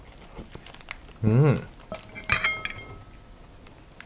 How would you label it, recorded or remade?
recorded